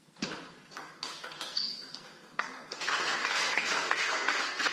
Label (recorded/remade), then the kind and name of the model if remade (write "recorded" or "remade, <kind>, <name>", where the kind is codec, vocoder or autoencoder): remade, codec, SNAC